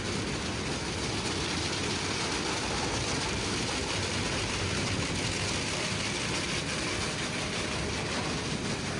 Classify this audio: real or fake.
real